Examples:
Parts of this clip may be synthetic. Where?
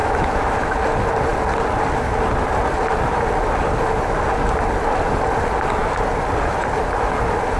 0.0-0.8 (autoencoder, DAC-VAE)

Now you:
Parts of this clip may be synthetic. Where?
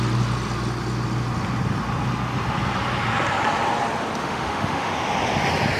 4.2-4.9 (autoencoder, DAC-VAE)